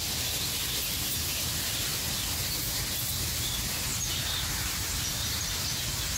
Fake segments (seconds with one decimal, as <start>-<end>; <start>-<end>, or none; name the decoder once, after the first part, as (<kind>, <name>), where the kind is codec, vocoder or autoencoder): 3.9-5.5 (vocoder, BigVGAN v2)